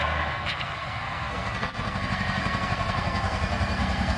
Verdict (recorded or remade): remade